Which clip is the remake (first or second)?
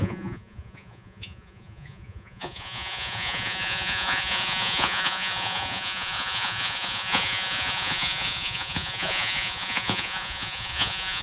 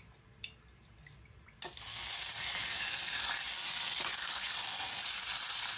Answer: first